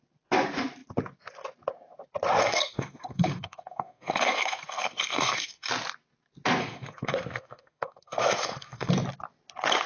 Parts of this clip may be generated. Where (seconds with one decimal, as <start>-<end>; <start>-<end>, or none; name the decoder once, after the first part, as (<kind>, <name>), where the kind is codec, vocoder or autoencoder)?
2.4-5.7 (codec, SNAC); 6.6-8.9